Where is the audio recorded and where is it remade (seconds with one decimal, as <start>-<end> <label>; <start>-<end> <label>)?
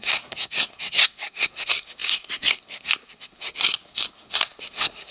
0.0-5.1 remade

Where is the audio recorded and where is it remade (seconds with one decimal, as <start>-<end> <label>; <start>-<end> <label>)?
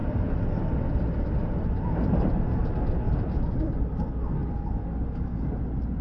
0.0-6.0 recorded